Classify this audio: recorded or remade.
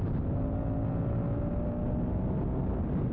recorded